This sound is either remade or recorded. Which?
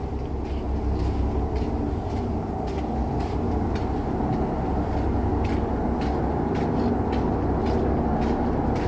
recorded